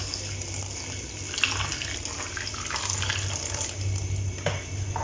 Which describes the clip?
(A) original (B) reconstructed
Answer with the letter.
A